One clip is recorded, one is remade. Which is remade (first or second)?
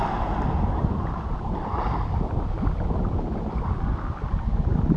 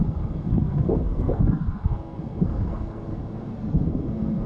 second